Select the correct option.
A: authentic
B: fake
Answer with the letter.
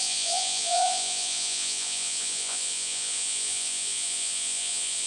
B